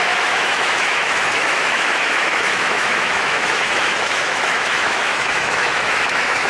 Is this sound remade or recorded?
remade